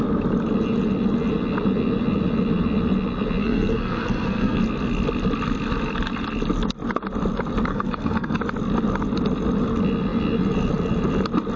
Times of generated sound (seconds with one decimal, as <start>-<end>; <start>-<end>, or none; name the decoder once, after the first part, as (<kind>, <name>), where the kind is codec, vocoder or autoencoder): 3.4-4.6 (codec, SNAC); 7.7-8.4